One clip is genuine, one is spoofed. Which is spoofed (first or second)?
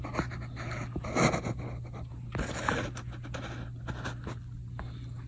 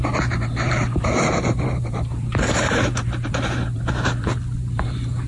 second